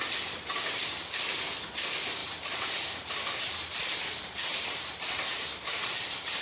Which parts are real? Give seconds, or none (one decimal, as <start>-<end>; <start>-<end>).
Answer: 0.0-2.2; 6.0-6.4